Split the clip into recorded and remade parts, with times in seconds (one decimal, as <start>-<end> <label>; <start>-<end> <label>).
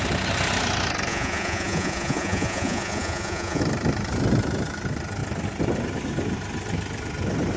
0.0-1.1 recorded; 1.1-3.6 remade; 3.6-7.6 recorded